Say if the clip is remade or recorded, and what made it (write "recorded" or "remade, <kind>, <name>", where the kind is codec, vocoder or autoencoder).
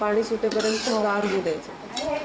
remade, vocoder, Vocos